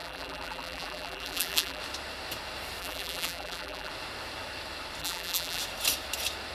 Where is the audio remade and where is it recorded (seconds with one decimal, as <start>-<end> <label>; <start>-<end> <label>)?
0.0-1.8 remade; 1.8-2.8 recorded; 2.8-3.9 remade; 3.9-5.0 recorded; 5.0-5.6 remade; 5.6-6.5 recorded